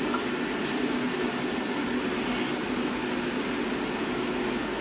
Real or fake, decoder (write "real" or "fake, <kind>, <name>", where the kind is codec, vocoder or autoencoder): real